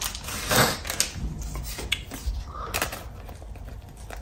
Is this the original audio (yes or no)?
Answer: yes